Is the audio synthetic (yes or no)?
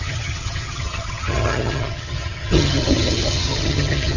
yes